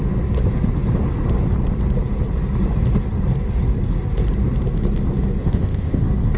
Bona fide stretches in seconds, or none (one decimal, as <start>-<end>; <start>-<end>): 0.0-5.4; 6.0-6.4